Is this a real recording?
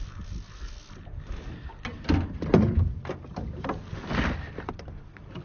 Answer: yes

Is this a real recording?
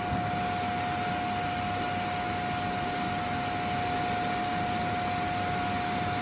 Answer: yes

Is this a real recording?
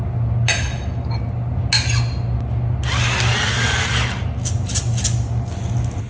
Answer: yes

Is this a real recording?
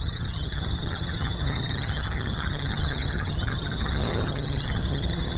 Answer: no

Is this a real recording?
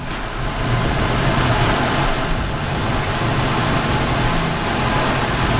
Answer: yes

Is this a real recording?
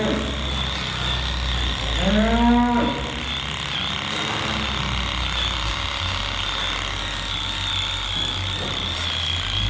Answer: yes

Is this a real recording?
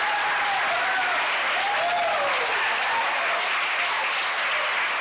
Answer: yes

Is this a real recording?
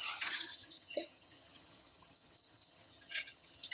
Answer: no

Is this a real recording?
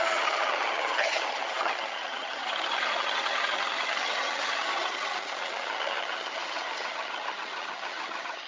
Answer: no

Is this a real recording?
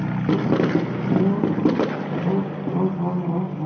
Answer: yes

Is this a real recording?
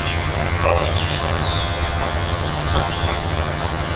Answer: no